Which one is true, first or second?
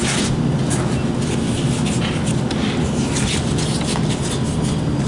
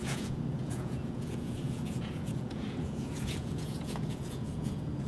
first